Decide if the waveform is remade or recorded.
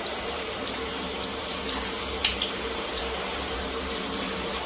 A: remade